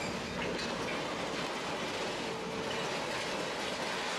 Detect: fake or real real